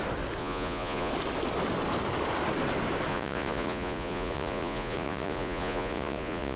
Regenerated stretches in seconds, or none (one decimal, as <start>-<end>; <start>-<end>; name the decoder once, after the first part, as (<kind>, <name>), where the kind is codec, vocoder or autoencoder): 0.4-1.1 (vocoder, Vocos); 3.1-6.6